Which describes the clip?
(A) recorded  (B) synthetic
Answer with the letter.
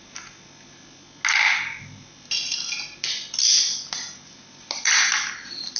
A